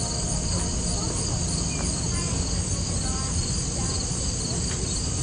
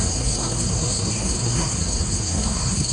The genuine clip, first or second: first